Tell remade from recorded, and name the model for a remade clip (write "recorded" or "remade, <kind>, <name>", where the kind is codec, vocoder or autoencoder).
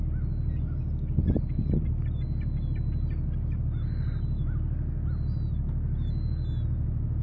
recorded